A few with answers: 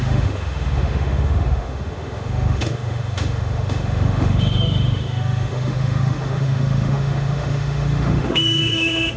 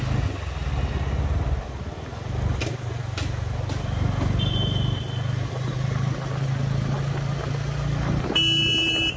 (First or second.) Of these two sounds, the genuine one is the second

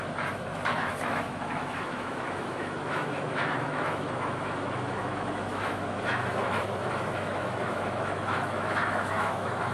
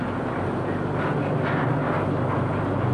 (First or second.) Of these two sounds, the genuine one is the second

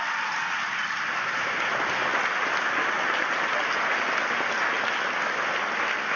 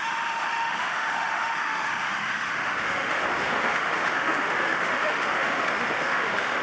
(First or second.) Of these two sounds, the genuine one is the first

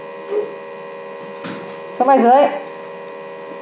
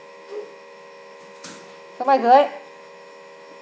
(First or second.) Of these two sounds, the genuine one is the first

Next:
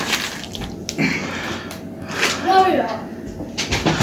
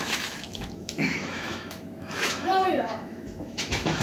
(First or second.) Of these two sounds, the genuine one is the first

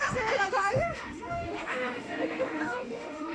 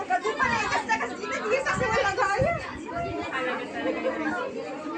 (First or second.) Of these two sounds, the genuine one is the second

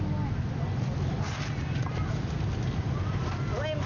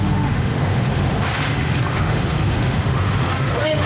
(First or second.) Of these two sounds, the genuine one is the first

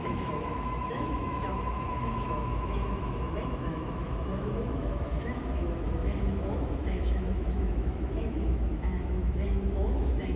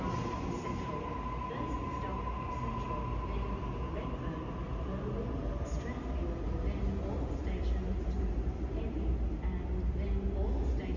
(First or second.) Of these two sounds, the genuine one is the second